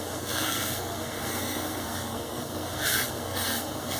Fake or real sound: fake